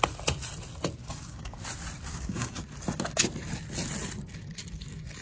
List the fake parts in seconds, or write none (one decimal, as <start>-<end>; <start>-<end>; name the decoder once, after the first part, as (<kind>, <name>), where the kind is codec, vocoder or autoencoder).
1.0-1.5 (codec, DAC); 2.1-2.6